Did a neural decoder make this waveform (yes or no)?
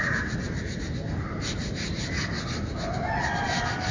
no